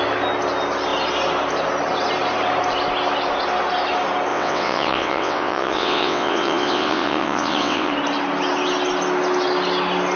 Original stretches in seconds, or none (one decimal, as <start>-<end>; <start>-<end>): 0.0-4.3; 7.9-10.2